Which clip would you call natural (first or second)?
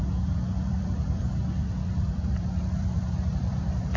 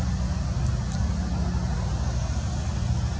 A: second